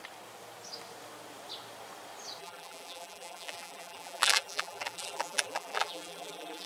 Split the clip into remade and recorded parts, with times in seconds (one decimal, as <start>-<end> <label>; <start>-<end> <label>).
0.0-2.4 recorded; 2.4-6.7 remade